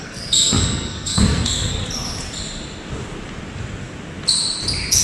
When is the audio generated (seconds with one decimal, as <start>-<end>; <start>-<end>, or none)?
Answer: 0.0-1.8